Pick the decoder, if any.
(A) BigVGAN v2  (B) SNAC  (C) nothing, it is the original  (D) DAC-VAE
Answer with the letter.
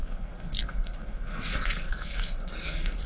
B